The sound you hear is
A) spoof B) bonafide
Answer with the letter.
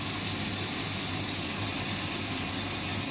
B